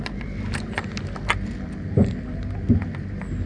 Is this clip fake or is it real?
real